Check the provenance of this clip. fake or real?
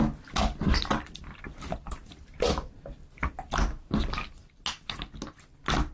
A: real